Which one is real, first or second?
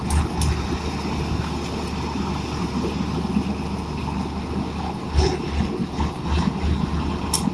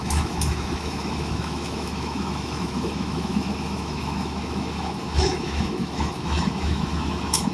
first